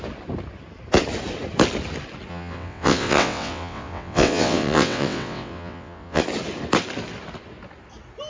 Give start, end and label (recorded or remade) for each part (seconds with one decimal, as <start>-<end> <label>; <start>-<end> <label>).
0.0-2.3 recorded; 2.3-6.2 remade; 6.2-8.3 recorded